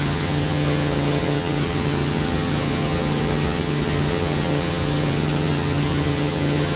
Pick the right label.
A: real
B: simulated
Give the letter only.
B